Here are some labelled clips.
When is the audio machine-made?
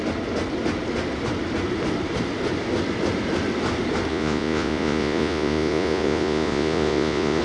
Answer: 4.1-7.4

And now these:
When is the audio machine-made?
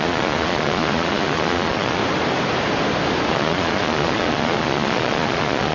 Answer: 0.0-2.0; 3.3-5.7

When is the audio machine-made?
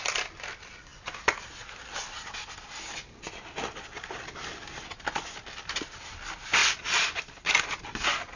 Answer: none